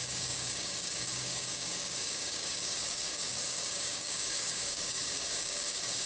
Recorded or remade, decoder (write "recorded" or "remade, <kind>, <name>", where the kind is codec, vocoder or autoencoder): remade, codec, DAC